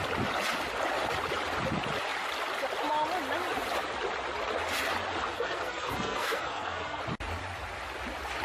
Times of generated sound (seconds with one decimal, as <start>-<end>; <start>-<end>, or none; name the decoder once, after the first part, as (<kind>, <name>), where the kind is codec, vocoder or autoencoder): 5.3-7.0 (codec, SNAC)